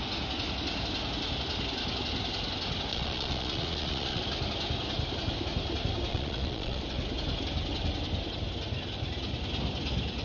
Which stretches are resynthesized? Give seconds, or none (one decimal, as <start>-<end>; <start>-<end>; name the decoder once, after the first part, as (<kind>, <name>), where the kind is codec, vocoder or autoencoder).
2.9-4.2 (vocoder, Vocos); 6.1-6.8